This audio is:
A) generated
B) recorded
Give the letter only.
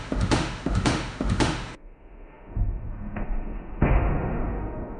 A